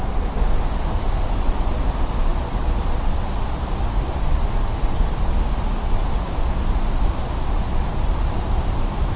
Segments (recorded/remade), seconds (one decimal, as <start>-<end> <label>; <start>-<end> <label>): 0.0-9.2 recorded